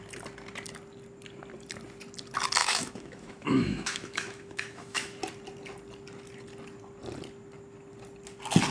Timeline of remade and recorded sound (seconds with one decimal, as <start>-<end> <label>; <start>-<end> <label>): 0.0-2.6 recorded; 2.6-5.2 remade; 5.2-8.7 recorded